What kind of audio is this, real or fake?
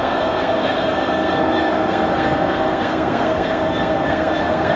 fake